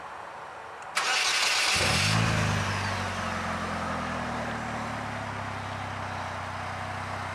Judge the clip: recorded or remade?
recorded